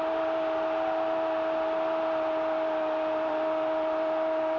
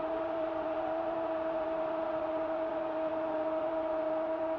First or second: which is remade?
second